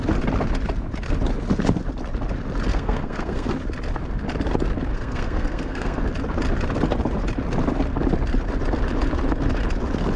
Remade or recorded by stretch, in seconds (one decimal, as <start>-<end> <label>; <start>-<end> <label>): 0.0-2.7 recorded; 2.7-3.5 remade; 3.5-4.9 recorded; 4.9-6.0 remade; 6.0-10.2 recorded